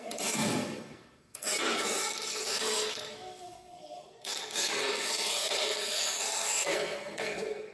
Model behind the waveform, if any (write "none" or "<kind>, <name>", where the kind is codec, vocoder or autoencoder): codec, SNAC